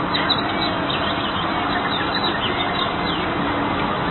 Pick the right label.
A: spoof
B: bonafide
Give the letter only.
B